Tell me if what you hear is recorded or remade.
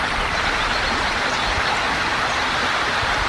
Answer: remade